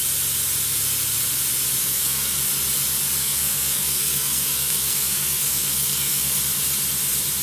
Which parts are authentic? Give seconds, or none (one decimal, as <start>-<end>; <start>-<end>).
0.0-1.8; 2.4-3.2; 6.4-7.4